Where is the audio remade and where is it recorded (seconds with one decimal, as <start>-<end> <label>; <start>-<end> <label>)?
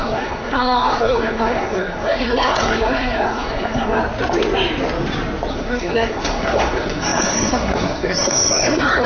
0.0-4.0 remade; 4.0-5.5 recorded; 5.5-9.1 remade